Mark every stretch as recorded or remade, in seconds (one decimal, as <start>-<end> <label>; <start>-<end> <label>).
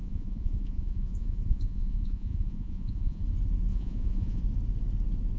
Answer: 0.0-3.2 remade; 3.2-3.7 recorded; 3.7-4.4 remade; 4.4-5.4 recorded